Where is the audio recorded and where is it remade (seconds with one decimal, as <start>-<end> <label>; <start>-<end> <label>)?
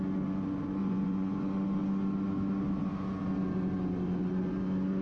0.0-0.8 recorded; 0.8-1.4 remade; 1.4-5.0 recorded